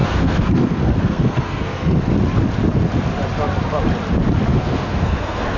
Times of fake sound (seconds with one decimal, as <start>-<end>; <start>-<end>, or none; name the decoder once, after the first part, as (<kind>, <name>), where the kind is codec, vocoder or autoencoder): 0.0-2.1 (codec, SNAC); 4.5-5.6